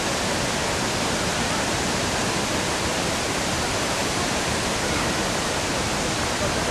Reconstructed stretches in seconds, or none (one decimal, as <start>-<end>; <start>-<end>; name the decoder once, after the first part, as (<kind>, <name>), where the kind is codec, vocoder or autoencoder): 1.3-2.3 (vocoder, BigVGAN v2); 2.9-3.5; 4.0-6.2